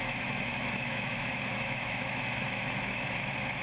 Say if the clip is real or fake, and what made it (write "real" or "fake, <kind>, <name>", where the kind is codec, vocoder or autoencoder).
fake, autoencoder, DAC-VAE